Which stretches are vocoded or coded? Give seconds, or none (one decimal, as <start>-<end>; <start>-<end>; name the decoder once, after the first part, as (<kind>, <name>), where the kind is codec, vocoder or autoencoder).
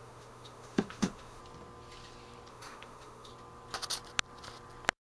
0.0-1.4 (autoencoder, DAC-VAE); 2.5-3.3